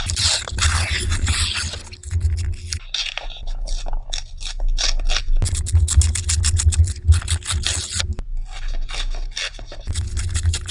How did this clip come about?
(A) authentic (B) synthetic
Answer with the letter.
A